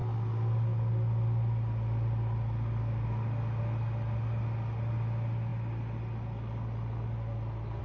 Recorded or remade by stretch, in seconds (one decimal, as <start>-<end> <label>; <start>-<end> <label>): 0.0-7.8 recorded